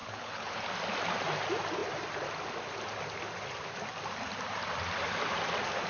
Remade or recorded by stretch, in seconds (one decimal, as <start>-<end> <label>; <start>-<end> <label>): 0.0-0.6 remade; 0.6-5.9 recorded